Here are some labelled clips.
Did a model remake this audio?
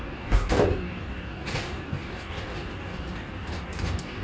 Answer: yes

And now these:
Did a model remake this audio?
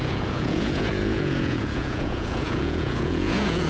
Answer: yes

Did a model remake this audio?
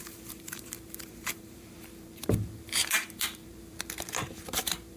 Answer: yes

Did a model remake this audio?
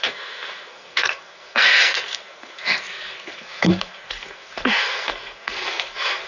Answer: yes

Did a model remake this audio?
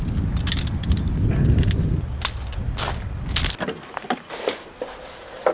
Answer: no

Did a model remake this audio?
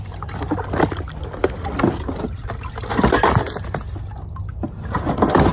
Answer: no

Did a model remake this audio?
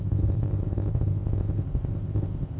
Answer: yes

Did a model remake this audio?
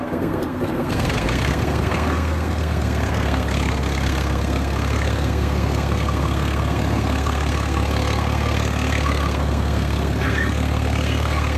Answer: yes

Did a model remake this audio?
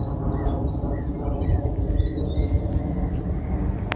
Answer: no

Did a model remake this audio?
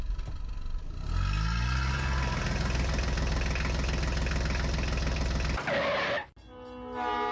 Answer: no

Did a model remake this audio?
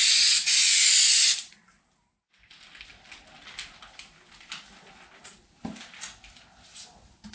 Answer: no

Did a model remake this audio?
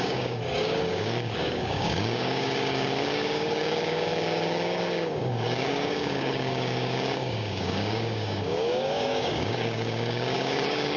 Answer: yes